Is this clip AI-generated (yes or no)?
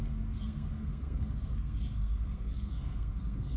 yes